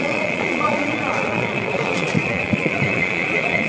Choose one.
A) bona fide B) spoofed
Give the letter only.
B